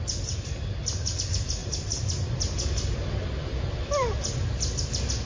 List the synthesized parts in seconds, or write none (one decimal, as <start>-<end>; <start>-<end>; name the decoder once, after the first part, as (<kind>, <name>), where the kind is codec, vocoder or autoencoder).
1.6-4.8 (vocoder, BigVGAN v2)